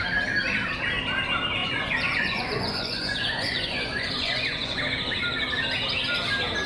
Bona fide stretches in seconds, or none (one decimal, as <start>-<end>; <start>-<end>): 0.0-1.6; 4.8-6.7